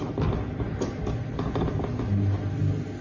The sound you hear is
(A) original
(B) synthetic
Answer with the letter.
A